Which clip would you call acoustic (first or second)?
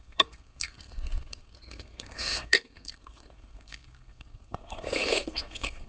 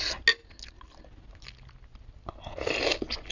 second